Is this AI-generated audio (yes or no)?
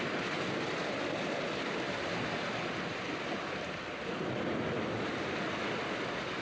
no